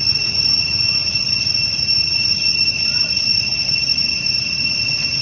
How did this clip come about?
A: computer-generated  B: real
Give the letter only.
A